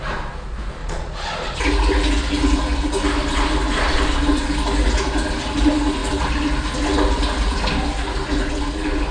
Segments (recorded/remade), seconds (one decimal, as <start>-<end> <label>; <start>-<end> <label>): 0.0-0.8 recorded; 0.8-1.6 remade; 1.6-9.1 recorded